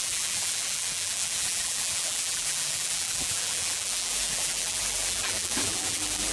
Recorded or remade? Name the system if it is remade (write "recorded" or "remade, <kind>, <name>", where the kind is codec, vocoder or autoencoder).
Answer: remade, vocoder, BigVGAN v2